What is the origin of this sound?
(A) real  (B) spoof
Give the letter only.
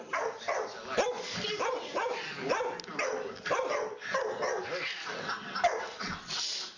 A